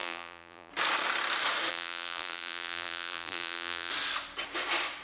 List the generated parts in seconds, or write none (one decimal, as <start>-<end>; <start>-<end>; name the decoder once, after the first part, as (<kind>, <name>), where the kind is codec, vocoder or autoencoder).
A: 0.0-0.7 (vocoder, BigVGAN v2); 1.7-3.9